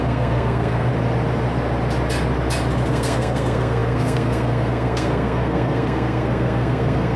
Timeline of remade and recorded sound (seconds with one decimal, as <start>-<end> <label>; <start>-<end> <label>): 0.0-0.9 remade; 0.9-2.9 recorded; 2.9-7.2 remade